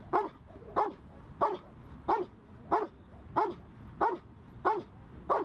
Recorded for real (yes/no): yes